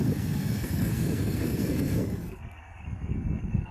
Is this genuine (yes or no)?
no